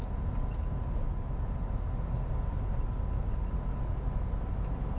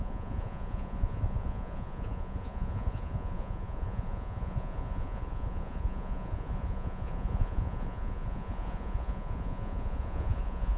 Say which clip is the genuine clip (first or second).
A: first